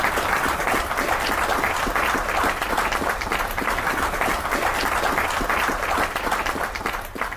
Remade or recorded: recorded